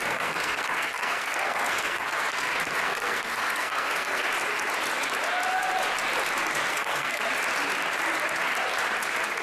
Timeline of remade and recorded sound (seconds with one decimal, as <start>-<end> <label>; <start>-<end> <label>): 0.0-4.3 remade; 4.3-6.7 recorded; 6.7-7.2 remade; 7.2-9.4 recorded